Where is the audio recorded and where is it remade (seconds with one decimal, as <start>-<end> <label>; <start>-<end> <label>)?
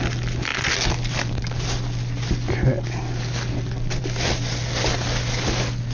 0.0-5.9 recorded